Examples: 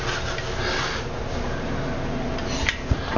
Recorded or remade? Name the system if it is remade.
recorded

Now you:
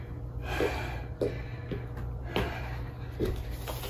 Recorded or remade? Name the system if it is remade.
recorded